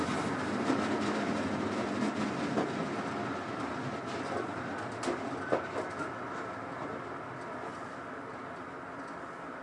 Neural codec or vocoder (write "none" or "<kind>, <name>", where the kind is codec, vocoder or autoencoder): none